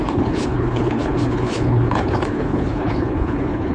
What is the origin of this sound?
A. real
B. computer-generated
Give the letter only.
B